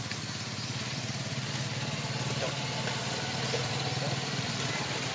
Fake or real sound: real